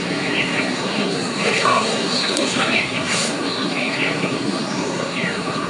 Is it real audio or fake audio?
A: fake